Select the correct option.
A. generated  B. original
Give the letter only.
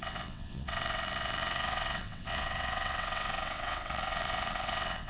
A